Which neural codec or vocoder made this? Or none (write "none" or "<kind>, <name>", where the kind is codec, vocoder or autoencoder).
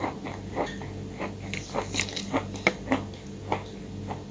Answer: none